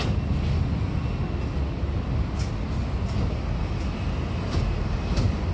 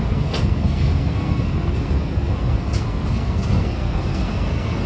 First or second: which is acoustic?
first